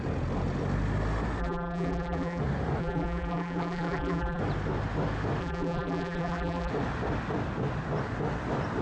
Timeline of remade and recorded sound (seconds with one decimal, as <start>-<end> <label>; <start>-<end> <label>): 0.0-1.4 recorded; 1.4-2.4 remade; 2.4-2.8 recorded; 2.8-4.4 remade; 4.4-5.4 recorded; 5.4-6.7 remade; 6.7-8.8 recorded